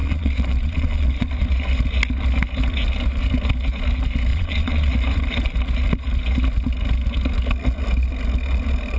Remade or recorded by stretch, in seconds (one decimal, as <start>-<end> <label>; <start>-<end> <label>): 0.0-1.3 remade; 1.3-4.3 recorded; 4.3-4.9 remade; 4.9-9.0 recorded